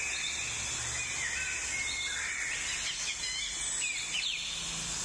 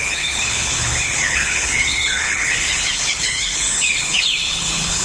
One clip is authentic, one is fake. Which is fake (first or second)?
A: second